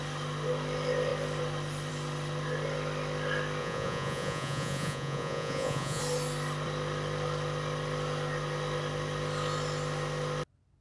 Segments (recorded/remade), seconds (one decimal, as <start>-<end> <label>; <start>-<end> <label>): 0.0-3.6 recorded; 3.6-6.0 remade; 6.0-10.8 recorded